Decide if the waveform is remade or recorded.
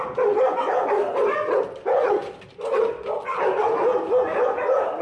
recorded